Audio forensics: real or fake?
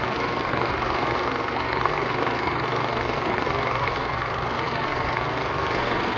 fake